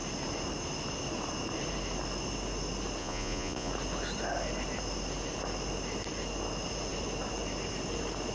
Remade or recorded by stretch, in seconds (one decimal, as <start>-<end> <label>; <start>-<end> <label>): 0.0-3.0 recorded; 3.0-3.7 remade; 3.7-8.3 recorded